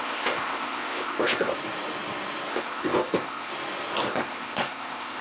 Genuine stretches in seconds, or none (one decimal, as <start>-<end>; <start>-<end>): 1.5-2.5; 3.5-4.1